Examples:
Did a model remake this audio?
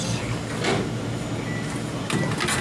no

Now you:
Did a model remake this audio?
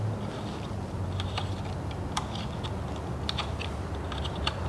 no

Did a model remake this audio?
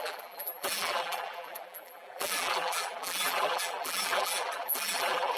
yes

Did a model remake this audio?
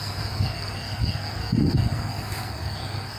yes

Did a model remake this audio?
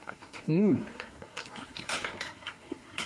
yes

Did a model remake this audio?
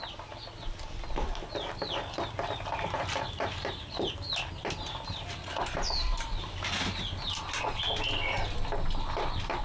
no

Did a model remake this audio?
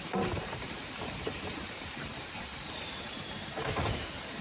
yes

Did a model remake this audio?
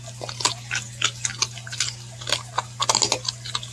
no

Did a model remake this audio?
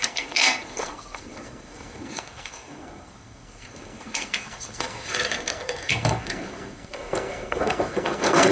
yes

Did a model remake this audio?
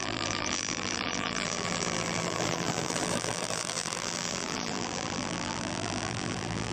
yes